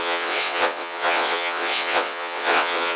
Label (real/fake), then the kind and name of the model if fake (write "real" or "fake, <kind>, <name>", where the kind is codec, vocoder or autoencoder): fake, vocoder, WaveNeXt